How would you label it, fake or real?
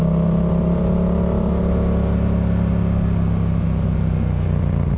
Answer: real